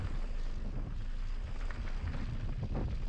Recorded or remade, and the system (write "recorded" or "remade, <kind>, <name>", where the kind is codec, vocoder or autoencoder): recorded